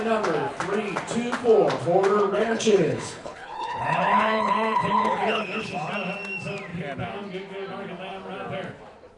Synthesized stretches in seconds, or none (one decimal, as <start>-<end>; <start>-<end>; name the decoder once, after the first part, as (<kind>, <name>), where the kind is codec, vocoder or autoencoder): 2.3-5.9 (codec, HILCodec)